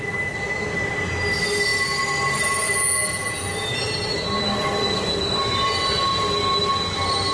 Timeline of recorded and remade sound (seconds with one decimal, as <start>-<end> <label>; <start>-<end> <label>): 0.0-7.3 recorded